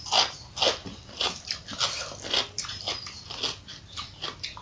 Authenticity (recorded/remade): recorded